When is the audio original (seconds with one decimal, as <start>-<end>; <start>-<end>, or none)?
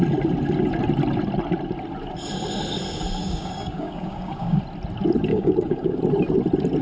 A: 0.0-3.2; 4.6-5.3; 6.0-6.8